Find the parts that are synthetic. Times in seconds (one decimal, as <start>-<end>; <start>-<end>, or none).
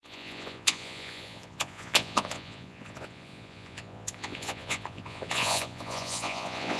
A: 0.0-6.8